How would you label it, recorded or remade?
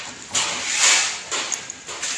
recorded